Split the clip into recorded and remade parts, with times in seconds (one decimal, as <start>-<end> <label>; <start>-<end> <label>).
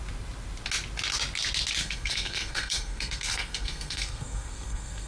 0.0-1.8 recorded; 1.8-5.1 remade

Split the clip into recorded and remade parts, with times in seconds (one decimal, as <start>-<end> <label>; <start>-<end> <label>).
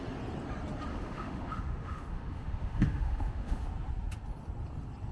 0.0-0.9 recorded; 0.9-3.6 remade; 3.6-5.1 recorded